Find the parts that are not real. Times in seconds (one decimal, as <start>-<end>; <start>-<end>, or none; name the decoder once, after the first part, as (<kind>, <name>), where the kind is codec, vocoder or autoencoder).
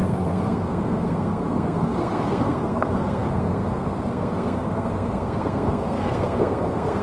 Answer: 0.0-7.0 (codec, SNAC)